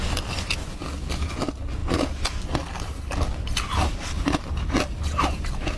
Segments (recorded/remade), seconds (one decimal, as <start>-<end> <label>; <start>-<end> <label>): 0.0-5.8 recorded